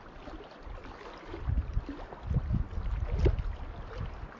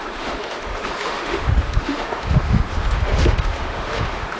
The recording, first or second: first